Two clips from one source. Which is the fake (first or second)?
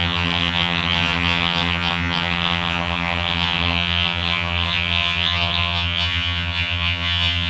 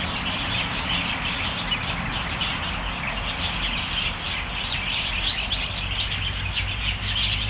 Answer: first